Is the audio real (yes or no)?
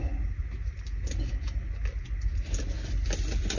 yes